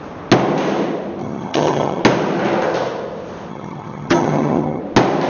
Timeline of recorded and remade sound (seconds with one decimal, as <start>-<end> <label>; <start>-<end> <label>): 0.0-1.2 recorded; 1.2-2.0 remade; 2.0-3.5 recorded; 3.5-4.8 remade; 4.8-5.3 recorded